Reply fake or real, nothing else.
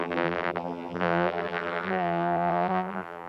fake